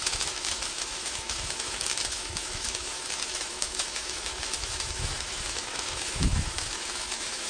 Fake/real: fake